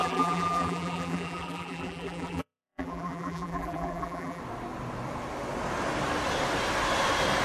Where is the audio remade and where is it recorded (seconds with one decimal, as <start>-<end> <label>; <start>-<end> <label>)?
0.0-4.4 remade; 4.4-7.4 recorded